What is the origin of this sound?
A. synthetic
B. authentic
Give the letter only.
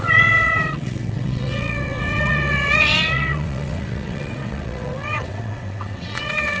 A